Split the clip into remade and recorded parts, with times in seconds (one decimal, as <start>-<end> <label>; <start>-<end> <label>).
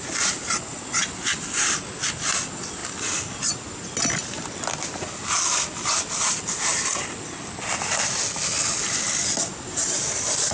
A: 0.0-10.5 recorded